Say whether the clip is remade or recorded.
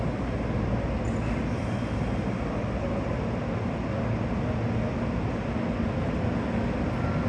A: recorded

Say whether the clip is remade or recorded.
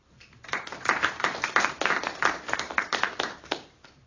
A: remade